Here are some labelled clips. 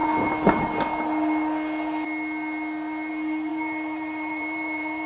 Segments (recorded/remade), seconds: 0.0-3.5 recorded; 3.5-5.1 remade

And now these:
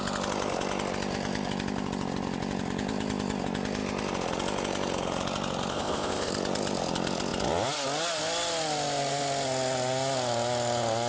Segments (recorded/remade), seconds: 0.0-5.7 recorded; 5.7-6.3 remade; 6.3-11.1 recorded

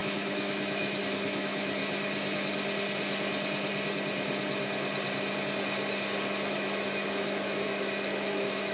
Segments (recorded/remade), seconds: 0.0-1.8 remade; 1.8-6.5 recorded; 6.5-8.7 remade

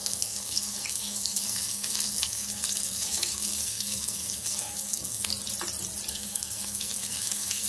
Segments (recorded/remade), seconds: 0.0-5.3 remade; 5.3-6.1 recorded; 6.1-7.7 remade

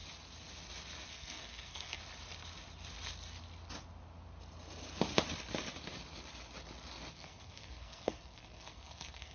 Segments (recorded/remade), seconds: 0.0-1.1 recorded; 1.1-2.0 remade; 2.0-7.1 recorded; 7.1-9.3 remade

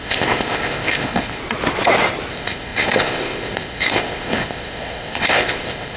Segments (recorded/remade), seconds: 0.0-1.4 remade; 1.4-2.3 recorded; 2.3-6.0 remade

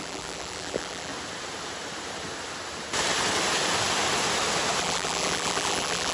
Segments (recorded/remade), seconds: 0.0-1.1 remade; 1.1-4.8 recorded; 4.8-6.1 remade

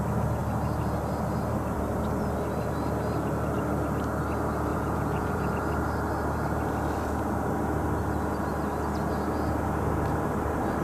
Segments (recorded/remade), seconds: 0.0-4.7 recorded; 4.7-5.5 remade; 5.5-10.8 recorded